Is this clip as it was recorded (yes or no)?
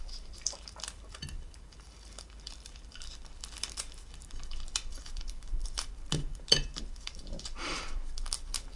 no